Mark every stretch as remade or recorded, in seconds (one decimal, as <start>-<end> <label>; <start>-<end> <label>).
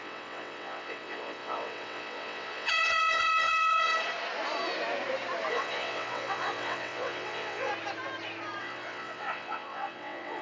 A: 0.0-3.9 remade; 3.9-5.5 recorded; 5.5-7.7 remade; 7.7-8.6 recorded; 8.6-10.4 remade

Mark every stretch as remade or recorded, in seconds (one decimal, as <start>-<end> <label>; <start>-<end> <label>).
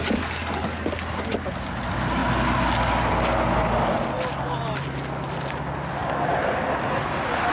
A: 0.0-7.5 recorded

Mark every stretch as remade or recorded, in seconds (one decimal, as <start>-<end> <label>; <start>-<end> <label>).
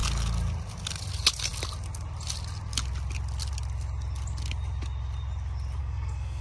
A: 0.0-5.8 recorded; 5.8-6.4 remade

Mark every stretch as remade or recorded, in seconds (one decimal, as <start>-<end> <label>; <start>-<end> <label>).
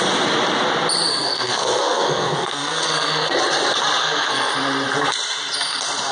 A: 0.0-1.1 recorded; 1.1-3.3 remade; 3.3-4.0 recorded; 4.0-4.5 remade; 4.5-6.1 recorded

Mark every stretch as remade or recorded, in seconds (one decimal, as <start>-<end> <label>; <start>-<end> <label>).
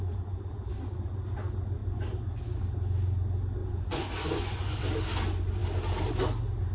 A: 0.0-3.6 recorded; 3.6-4.8 remade; 4.8-6.7 recorded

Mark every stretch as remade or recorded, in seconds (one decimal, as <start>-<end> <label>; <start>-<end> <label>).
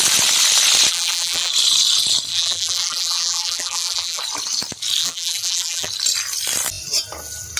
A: 0.0-0.9 recorded; 0.9-1.5 remade; 1.5-2.3 recorded; 2.3-4.2 remade; 4.2-5.0 recorded; 5.0-5.9 remade; 5.9-7.6 recorded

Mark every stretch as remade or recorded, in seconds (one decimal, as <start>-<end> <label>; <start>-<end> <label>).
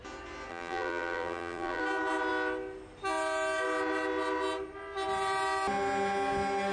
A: 0.0-0.5 recorded; 0.5-1.8 remade; 1.8-6.7 recorded